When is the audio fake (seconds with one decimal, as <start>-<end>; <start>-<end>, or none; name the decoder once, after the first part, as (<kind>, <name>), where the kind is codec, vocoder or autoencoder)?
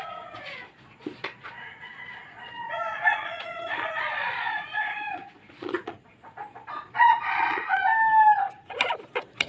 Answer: 0.0-7.9 (vocoder, Vocos); 9.1-9.5